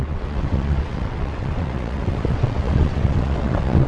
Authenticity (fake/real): fake